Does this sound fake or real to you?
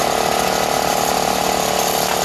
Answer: real